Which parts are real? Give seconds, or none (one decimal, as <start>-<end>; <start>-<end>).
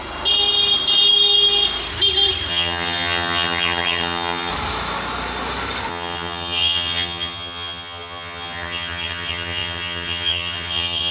0.0-2.5; 4.5-5.9